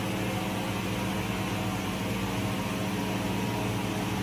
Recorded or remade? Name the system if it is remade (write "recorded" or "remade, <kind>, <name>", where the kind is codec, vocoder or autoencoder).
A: recorded